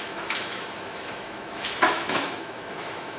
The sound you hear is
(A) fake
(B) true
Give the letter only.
A